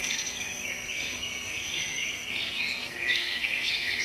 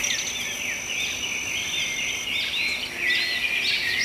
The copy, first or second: first